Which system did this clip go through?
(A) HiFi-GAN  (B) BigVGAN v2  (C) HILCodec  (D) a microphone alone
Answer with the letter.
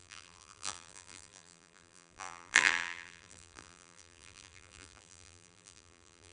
B